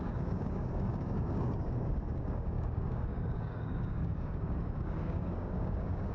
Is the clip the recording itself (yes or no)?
no